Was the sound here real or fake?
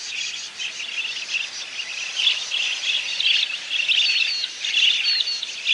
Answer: real